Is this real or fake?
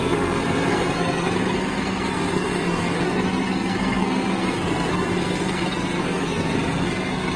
fake